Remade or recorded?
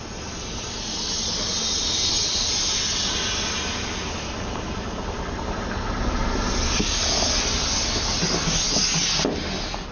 recorded